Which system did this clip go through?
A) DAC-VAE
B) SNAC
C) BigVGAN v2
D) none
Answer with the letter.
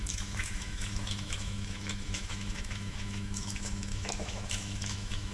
A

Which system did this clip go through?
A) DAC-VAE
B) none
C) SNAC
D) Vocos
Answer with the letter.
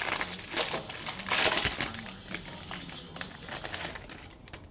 B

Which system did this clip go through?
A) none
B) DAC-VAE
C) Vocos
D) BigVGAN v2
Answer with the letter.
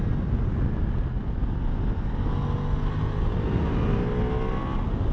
A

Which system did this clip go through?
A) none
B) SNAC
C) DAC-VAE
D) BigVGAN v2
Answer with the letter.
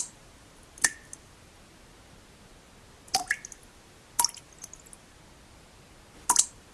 A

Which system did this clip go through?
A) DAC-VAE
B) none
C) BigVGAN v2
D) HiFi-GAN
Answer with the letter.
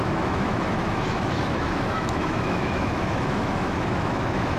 A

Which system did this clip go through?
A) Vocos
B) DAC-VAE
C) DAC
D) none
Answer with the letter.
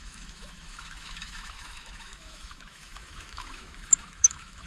B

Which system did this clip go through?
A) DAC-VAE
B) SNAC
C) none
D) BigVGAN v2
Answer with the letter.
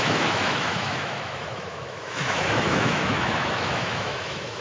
A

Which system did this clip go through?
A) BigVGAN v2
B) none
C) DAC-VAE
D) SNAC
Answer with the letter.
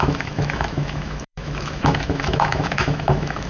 C